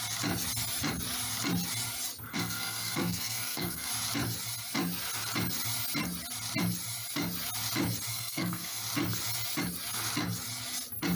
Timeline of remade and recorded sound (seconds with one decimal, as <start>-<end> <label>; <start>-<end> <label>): 0.0-2.3 recorded; 2.3-3.9 remade; 3.9-8.1 recorded; 8.1-8.8 remade; 8.8-11.1 recorded